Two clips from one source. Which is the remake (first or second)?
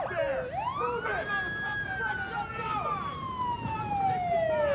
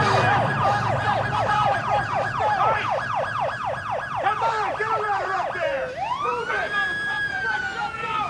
second